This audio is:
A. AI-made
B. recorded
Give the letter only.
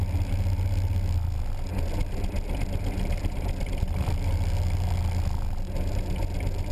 B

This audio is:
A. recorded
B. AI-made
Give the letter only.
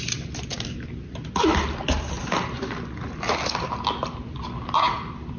A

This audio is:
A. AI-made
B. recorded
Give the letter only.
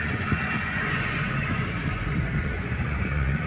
A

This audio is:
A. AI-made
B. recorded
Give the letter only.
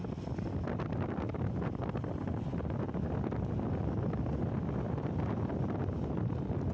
B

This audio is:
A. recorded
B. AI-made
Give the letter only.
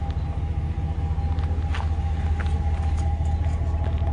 A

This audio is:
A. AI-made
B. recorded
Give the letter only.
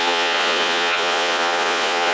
A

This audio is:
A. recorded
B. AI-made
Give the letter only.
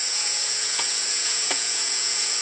B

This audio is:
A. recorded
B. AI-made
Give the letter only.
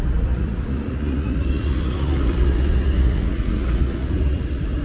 B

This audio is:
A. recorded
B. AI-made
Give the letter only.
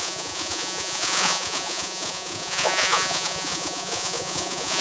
B